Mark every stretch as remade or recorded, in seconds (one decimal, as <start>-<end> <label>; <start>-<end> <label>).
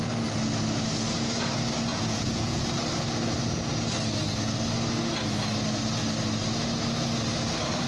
0.0-1.9 recorded; 1.9-2.6 remade; 2.6-7.9 recorded